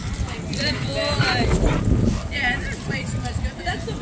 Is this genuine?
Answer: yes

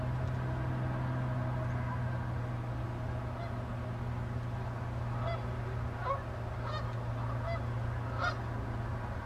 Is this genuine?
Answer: yes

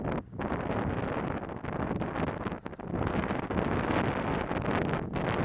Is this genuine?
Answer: yes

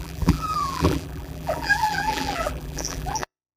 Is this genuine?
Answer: no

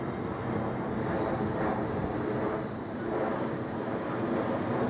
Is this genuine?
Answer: yes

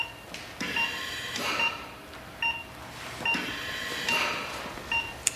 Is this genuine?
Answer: yes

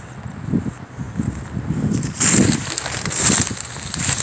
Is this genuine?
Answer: yes